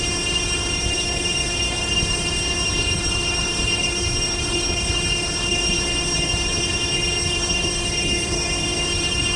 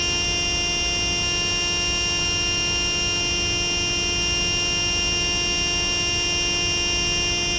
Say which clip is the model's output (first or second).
first